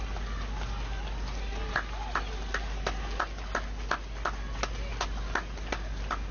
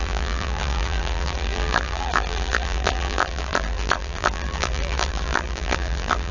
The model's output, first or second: second